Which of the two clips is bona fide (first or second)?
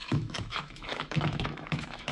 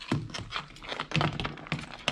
second